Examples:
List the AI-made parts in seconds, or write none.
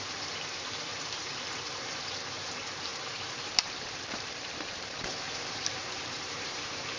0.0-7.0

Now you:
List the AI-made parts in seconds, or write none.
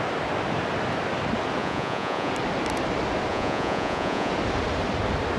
1.6-2.3; 3.3-4.3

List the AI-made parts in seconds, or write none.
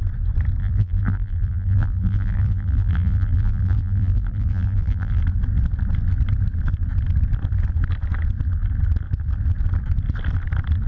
0.6-5.2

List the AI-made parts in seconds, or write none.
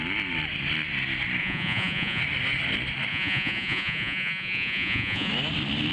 1.4-2.2; 3.1-5.3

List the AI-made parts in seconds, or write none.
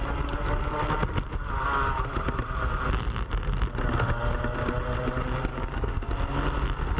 5.5-6.1